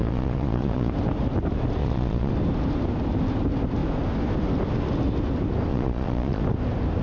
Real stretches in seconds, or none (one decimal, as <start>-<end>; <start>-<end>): 0.9-1.8; 2.3-5.7; 6.4-7.0